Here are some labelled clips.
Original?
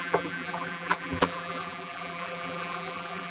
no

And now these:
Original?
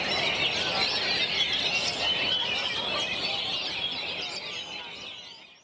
yes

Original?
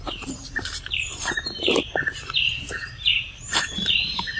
no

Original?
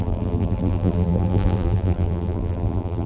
no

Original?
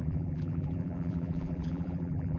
no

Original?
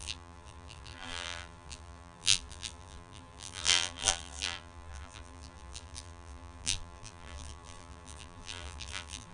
no